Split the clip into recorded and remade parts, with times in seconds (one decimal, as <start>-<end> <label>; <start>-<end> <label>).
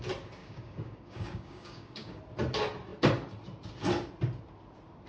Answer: 0.0-0.4 recorded; 0.4-2.2 remade; 2.2-5.1 recorded